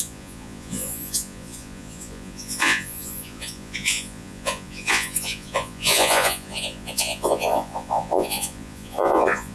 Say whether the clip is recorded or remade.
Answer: remade